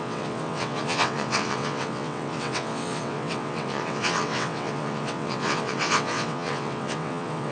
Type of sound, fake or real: fake